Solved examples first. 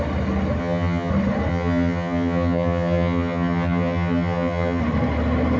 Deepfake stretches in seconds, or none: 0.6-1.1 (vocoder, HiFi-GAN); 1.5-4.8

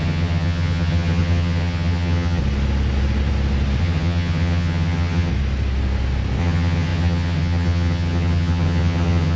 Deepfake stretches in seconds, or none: 0.0-2.4 (vocoder, HiFi-GAN); 3.8-5.3; 6.4-9.4

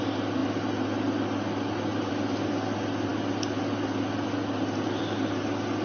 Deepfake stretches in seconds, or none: none